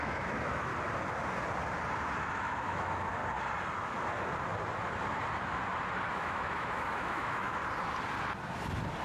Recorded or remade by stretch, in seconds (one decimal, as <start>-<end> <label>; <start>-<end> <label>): 0.0-0.7 remade; 0.7-2.3 recorded; 2.3-3.2 remade; 3.2-6.1 recorded; 6.1-7.6 remade; 7.6-9.0 recorded